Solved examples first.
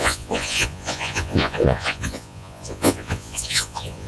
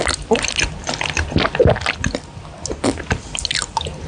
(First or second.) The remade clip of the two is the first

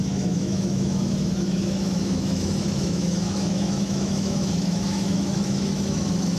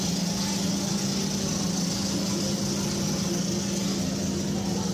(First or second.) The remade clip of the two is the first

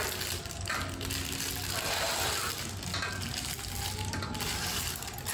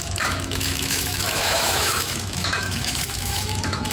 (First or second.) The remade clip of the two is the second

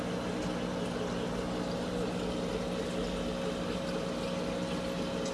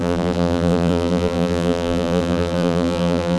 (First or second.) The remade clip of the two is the second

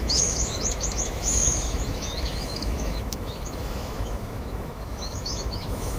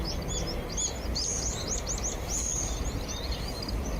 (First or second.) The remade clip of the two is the first